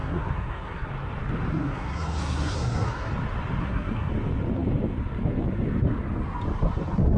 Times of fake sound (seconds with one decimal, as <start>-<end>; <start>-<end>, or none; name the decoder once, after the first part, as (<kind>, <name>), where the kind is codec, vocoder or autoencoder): 0.0-0.9 (codec, SNAC); 1.5-3.1; 3.6-4.1